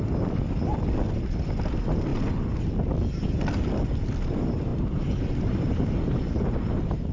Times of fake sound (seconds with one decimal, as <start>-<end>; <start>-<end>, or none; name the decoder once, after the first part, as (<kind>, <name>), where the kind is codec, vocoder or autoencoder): 4.7-5.9 (vocoder, BigVGAN v2)